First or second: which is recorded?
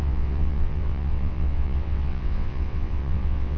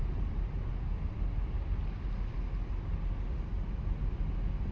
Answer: second